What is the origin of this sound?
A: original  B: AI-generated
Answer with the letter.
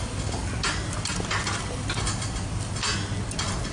A